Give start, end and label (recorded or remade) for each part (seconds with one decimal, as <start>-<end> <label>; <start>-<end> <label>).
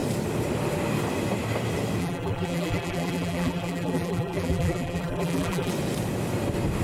0.0-2.0 recorded; 2.0-5.7 remade; 5.7-6.8 recorded